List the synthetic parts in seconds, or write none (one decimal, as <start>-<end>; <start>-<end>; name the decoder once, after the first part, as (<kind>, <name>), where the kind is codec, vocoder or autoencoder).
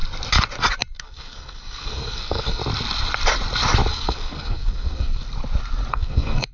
1.0-2.6 (codec, SNAC); 3.9-5.2; 5.9-6.5